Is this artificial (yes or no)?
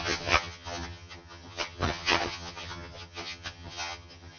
yes